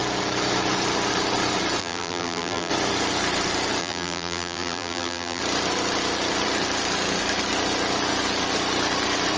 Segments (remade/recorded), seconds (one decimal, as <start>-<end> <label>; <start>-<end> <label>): 0.0-1.8 recorded; 1.8-2.7 remade; 2.7-3.8 recorded; 3.8-5.4 remade; 5.4-9.4 recorded